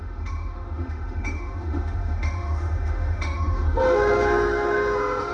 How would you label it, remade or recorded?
remade